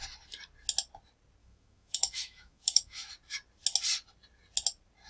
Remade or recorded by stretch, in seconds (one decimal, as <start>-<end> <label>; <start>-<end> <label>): 0.0-1.4 recorded; 1.4-3.1 remade; 3.1-5.1 recorded